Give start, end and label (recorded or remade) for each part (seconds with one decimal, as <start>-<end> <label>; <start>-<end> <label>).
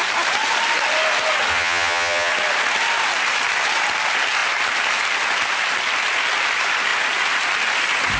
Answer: 0.0-1.5 recorded; 1.5-2.3 remade; 2.3-8.2 recorded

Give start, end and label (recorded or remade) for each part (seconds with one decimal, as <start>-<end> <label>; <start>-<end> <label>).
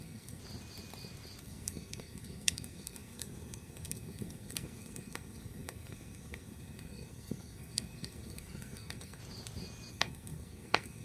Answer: 0.0-0.4 remade; 0.4-1.4 recorded; 1.4-9.2 remade; 9.2-9.9 recorded; 9.9-11.0 remade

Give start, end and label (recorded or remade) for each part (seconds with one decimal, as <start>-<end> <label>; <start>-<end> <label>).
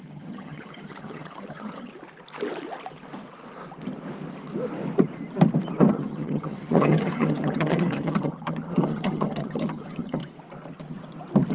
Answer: 0.0-1.9 remade; 1.9-5.9 recorded; 5.9-10.2 remade; 10.2-11.5 recorded